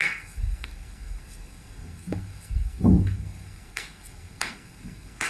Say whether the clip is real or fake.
fake